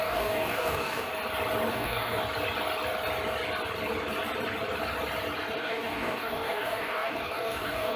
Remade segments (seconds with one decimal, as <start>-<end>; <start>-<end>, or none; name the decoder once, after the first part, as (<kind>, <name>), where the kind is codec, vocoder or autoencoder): 0.0-1.1 (codec, DAC); 1.7-2.2; 5.6-8.0